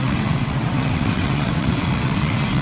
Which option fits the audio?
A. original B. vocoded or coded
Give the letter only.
B